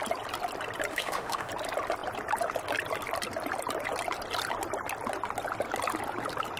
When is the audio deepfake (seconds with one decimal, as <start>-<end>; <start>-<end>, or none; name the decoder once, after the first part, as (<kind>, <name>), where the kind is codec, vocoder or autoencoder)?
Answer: 0.9-1.5 (autoencoder, DAC-VAE)